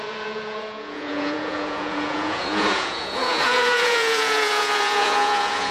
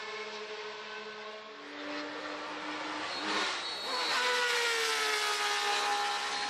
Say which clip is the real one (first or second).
second